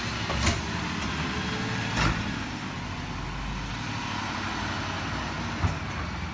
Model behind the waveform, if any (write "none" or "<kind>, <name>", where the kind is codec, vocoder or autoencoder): none